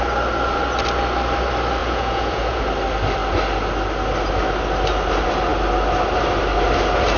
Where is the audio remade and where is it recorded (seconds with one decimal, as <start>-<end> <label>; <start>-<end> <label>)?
0.0-1.8 recorded; 1.8-2.6 remade; 2.6-7.2 recorded